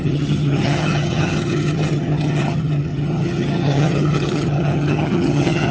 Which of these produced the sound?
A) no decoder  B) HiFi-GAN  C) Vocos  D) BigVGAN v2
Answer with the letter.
B